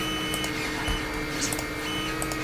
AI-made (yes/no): no